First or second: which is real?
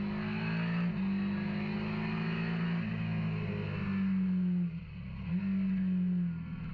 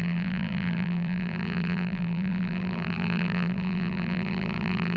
first